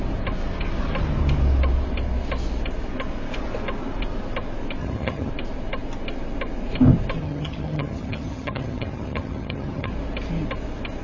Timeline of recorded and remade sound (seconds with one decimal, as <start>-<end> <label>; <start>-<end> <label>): 0.0-4.8 recorded; 4.8-5.3 remade; 5.3-7.2 recorded; 7.2-9.9 remade; 9.9-11.0 recorded